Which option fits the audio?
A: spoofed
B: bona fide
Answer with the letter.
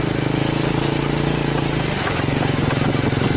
B